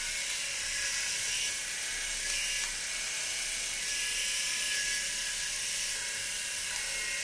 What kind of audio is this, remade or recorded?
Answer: recorded